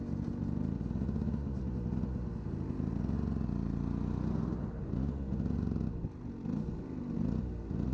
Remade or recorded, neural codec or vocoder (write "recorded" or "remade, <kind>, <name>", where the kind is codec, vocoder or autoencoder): recorded